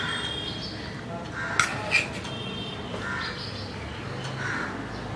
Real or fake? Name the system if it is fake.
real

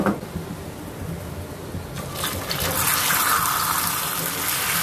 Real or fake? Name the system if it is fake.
real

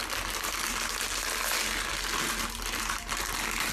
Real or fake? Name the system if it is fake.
real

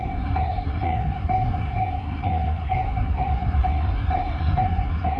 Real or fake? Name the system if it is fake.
fake, codec, SNAC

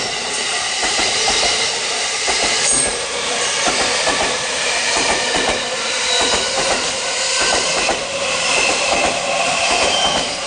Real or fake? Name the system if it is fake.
fake, vocoder, BigVGAN v2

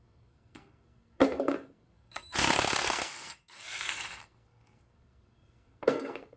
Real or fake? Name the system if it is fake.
fake, codec, SNAC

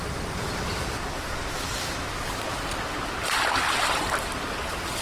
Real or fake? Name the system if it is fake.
real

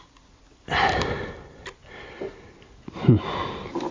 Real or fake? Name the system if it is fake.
real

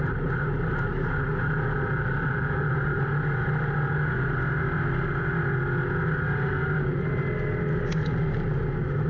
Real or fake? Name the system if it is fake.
real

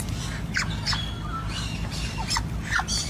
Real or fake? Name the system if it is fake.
real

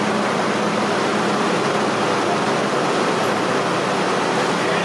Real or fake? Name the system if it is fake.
real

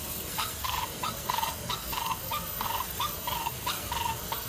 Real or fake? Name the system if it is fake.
fake, codec, SNAC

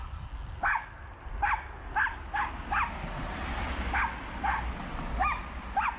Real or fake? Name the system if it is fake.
real